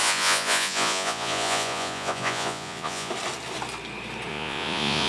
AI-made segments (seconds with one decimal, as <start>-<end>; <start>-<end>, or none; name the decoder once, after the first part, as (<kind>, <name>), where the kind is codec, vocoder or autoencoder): 0.0-3.1 (vocoder, Vocos); 4.3-5.1